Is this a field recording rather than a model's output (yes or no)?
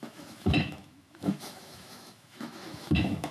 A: no